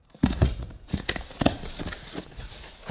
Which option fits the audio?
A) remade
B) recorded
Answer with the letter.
A